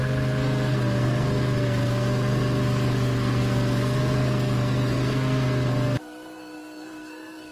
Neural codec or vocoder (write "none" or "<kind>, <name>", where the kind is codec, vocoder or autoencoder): codec, SNAC